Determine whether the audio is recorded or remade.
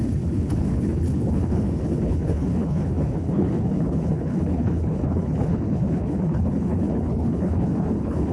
remade